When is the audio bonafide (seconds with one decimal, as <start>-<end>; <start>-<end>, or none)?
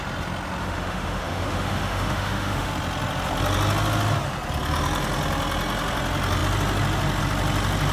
0.0-0.6; 2.7-7.9